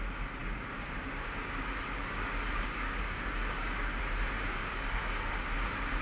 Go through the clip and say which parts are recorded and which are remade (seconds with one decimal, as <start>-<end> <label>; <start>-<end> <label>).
0.0-0.4 recorded; 0.4-4.0 remade; 4.0-4.6 recorded; 4.6-5.3 remade; 5.3-6.0 recorded